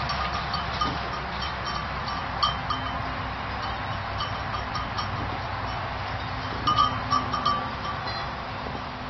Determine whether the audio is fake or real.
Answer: real